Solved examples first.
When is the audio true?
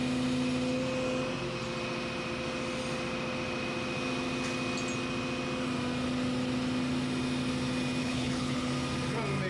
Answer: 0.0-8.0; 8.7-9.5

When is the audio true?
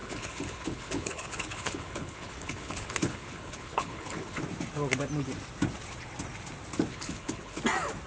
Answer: 4.4-6.9; 7.6-8.1